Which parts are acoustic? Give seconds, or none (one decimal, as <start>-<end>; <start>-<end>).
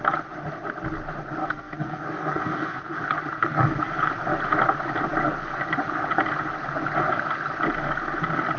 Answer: 0.0-1.4; 2.8-3.3; 4.1-8.6